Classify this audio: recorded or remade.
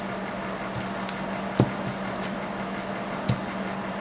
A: recorded